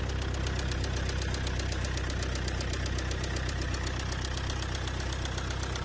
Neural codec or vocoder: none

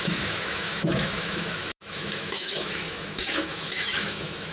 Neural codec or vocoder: autoencoder, DAC-VAE